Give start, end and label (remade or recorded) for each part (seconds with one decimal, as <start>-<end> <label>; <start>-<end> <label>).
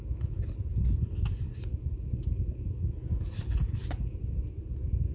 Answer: 0.0-5.1 recorded